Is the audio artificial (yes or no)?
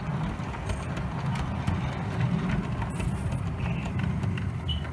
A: no